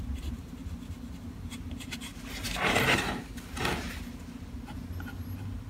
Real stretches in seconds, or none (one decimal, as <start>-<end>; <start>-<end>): 0.6-1.3; 2.1-5.7